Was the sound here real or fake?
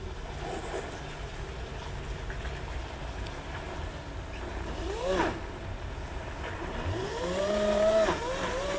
fake